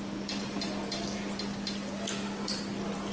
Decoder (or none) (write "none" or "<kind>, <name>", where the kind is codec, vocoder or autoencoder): none